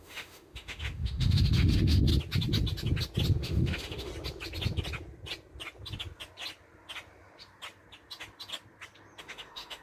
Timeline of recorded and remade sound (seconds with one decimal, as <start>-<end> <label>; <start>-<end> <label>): 0.0-2.1 remade; 2.1-3.4 recorded; 3.4-4.1 remade; 4.1-9.2 recorded; 9.2-9.8 remade